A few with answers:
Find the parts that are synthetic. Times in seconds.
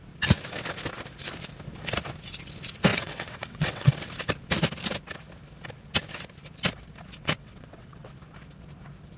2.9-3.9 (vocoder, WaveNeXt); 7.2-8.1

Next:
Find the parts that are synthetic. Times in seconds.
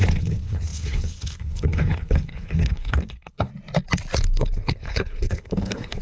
0.0-3.5 (codec, HILCodec); 4.2-6.0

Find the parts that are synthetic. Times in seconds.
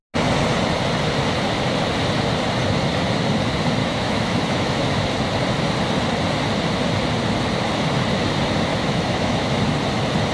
3.8-4.8 (autoencoder, DAC-VAE); 8.7-9.6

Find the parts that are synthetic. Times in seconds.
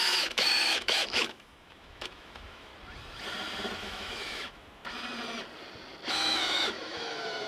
0.0-2.7 (autoencoder, DAC-VAE); 3.8-4.8; 6.1-7.5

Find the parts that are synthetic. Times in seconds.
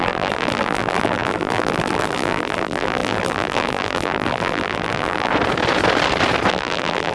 0.0-5.3 (vocoder, BigVGAN v2); 6.5-7.1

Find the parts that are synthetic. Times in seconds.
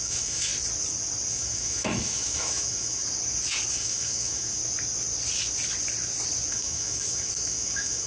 0.0-0.5 (autoencoder, DAC-VAE); 1.3-3.0; 3.7-4.6; 6.5-8.1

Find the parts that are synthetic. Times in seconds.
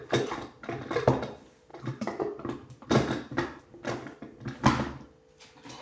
1.7-3.6 (vocoder, BigVGAN v2)